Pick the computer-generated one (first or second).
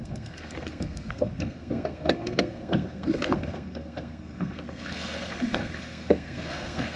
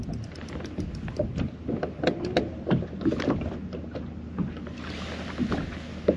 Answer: first